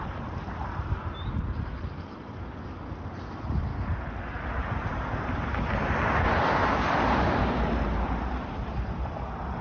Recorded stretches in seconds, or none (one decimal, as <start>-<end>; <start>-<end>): 0.0-9.6